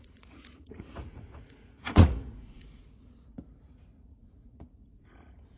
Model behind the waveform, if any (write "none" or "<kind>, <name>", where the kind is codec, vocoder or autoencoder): vocoder, Vocos